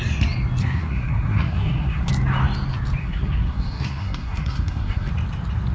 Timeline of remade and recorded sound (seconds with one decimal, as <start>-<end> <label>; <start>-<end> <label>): 0.0-0.6 recorded; 0.6-2.1 remade; 2.1-3.0 recorded; 3.0-5.1 remade; 5.1-5.7 recorded